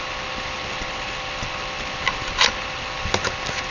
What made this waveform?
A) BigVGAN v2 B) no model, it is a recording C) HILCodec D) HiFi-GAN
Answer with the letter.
B